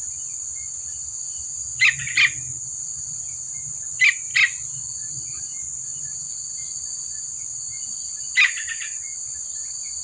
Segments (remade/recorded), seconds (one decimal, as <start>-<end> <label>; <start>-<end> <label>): 0.0-10.0 recorded